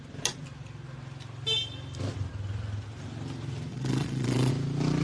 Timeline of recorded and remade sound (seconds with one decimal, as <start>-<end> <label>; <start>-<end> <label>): 0.0-3.7 recorded; 3.7-4.5 remade; 4.5-5.0 recorded